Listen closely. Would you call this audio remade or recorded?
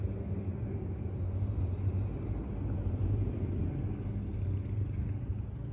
recorded